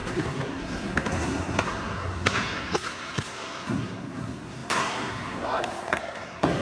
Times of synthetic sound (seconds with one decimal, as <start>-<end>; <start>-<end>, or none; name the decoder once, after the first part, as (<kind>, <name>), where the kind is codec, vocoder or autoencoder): 0.0-6.6 (codec, SNAC)